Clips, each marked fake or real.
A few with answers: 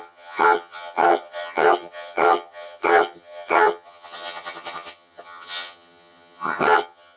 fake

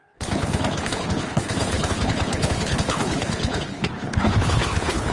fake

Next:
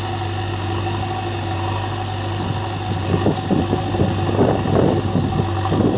real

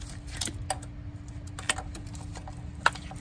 real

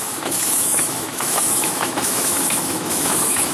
fake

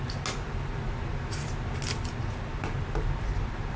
real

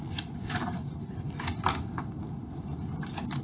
fake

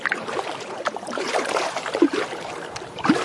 fake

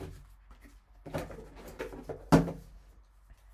real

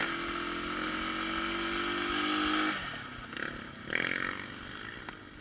real